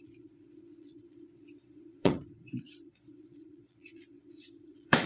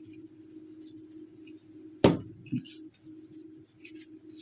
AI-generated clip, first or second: first